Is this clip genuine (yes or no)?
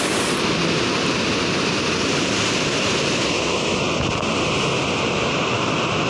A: yes